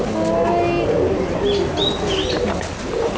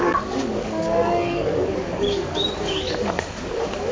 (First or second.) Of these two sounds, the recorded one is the first